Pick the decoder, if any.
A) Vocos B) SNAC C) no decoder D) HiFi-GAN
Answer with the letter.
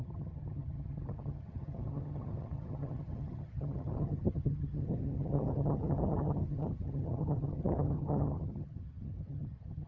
D